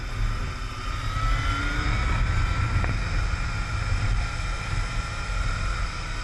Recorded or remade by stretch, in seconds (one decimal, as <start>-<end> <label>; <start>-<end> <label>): 0.0-6.2 recorded